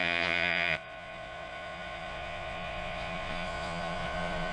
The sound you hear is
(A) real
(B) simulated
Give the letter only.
B